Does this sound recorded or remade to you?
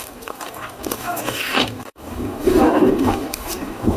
remade